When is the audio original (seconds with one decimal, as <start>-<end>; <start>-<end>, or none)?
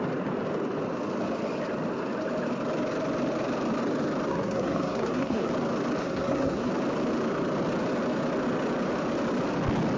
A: 0.0-4.3; 5.5-6.0; 6.7-10.0